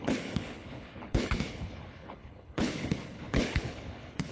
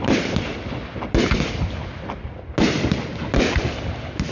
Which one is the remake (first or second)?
first